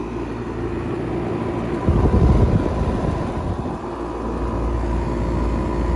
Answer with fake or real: real